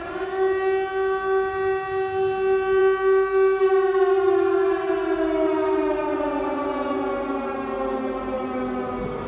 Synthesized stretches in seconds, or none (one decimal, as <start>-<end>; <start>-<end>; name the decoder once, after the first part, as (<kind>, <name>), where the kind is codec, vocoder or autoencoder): none